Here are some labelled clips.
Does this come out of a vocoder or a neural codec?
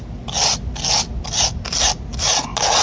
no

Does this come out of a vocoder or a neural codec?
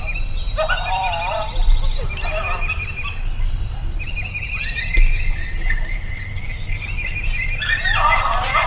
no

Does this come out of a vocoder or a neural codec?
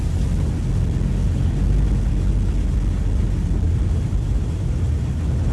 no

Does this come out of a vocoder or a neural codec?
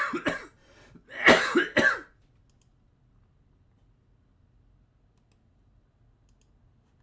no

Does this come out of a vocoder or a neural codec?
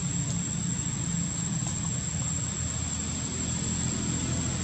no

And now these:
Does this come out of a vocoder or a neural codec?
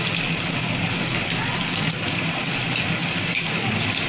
no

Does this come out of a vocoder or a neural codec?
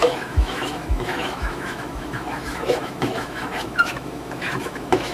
yes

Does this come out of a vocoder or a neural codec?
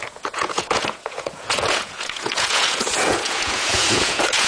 yes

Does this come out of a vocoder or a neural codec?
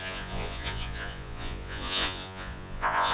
yes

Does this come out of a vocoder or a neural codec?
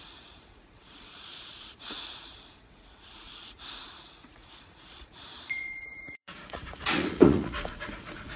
yes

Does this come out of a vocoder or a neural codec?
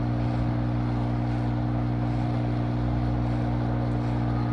no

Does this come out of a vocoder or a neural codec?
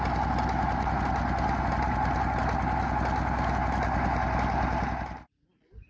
no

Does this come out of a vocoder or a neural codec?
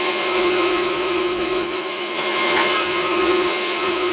yes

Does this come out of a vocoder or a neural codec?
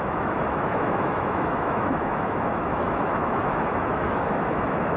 yes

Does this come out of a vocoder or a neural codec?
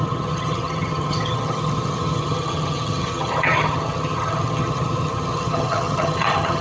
yes